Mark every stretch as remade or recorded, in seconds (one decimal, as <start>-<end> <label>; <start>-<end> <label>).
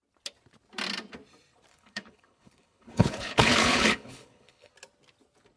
0.0-1.7 recorded; 1.7-4.7 remade; 4.7-5.6 recorded